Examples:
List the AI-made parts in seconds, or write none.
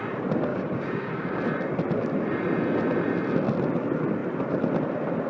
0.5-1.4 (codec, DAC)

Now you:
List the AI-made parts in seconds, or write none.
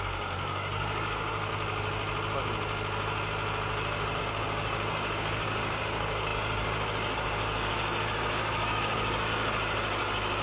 0.0-1.5 (codec, DAC); 4.2-10.4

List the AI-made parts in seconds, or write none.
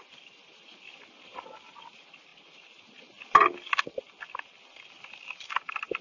none